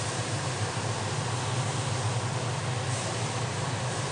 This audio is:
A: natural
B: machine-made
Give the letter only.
A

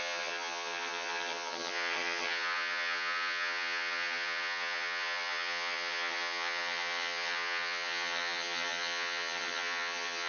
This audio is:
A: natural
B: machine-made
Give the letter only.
B